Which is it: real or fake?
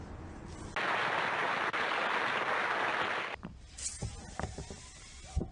real